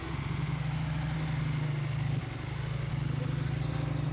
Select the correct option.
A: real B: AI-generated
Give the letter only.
A